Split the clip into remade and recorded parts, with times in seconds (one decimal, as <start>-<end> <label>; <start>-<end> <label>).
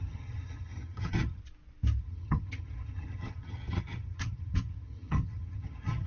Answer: 0.0-1.4 remade; 1.4-2.0 recorded; 2.0-6.1 remade